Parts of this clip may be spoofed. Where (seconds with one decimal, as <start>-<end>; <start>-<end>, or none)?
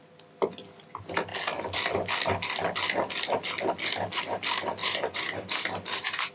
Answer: 4.8-6.3